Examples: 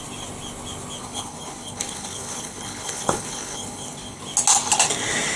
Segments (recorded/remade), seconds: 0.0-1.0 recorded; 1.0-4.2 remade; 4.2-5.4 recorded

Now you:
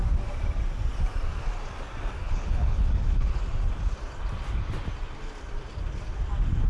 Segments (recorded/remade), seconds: 0.0-2.2 recorded; 2.2-3.4 remade; 3.4-6.7 recorded

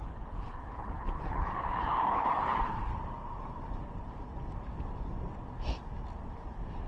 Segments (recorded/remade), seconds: 0.0-2.9 remade; 2.9-6.9 recorded

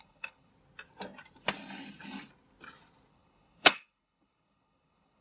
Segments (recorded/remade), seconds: 0.0-0.5 remade; 0.5-3.1 recorded; 3.1-5.2 remade

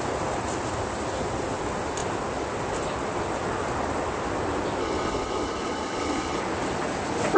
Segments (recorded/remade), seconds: 0.0-4.8 recorded; 4.8-6.4 remade; 6.4-7.4 recorded

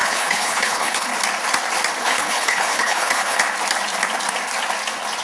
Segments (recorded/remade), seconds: 0.0-1.1 remade; 1.1-2.0 recorded; 2.0-3.4 remade; 3.4-5.2 recorded